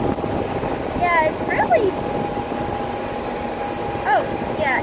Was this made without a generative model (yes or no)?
yes